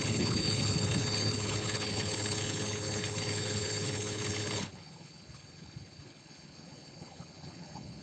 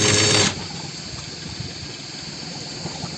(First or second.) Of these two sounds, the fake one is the first